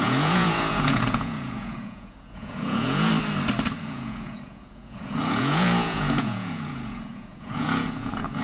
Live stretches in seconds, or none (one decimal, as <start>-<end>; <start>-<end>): 3.1-3.8